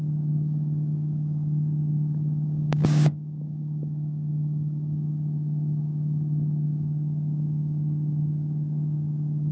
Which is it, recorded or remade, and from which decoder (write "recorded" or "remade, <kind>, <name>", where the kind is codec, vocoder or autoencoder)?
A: remade, codec, DAC